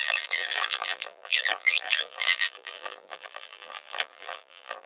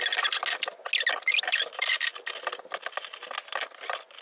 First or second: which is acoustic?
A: second